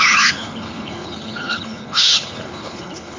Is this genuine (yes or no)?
no